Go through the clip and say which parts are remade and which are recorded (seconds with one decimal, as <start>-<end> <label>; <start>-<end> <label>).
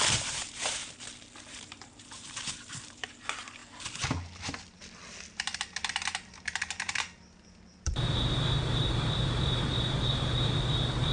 0.0-0.8 remade; 0.8-1.5 recorded; 1.5-3.6 remade; 3.6-7.8 recorded; 7.8-11.1 remade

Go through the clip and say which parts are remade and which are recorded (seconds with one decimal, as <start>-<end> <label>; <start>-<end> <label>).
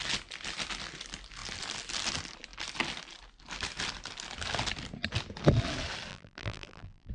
0.0-6.1 recorded; 6.1-7.1 remade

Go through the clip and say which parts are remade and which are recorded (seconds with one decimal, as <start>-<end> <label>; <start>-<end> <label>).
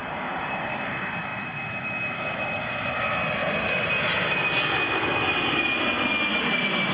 0.0-0.9 remade; 0.9-3.4 recorded; 3.4-4.2 remade; 4.2-6.9 recorded